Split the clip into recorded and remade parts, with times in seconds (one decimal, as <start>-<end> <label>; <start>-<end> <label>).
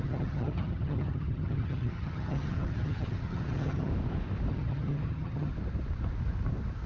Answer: 0.0-3.9 remade; 3.9-4.5 recorded; 4.5-5.5 remade; 5.5-6.9 recorded